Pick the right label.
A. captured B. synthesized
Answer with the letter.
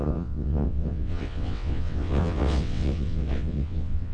B